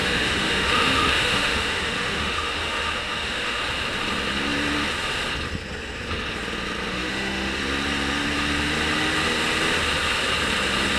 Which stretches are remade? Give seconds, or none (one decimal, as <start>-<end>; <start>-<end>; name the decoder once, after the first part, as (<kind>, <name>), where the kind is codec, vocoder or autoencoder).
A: 0.0-3.6 (autoencoder, DAC-VAE); 6.9-7.6